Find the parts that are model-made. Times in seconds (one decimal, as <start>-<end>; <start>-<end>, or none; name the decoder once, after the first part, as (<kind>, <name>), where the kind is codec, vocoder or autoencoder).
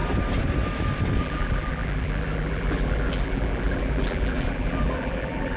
1.2-5.6 (vocoder, BigVGAN v2)